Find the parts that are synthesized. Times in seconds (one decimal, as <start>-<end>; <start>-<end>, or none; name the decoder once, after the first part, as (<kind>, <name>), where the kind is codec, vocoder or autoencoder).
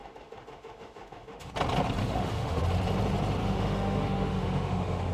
0.0-1.5 (autoencoder, DAC-VAE); 2.0-2.6; 3.4-5.1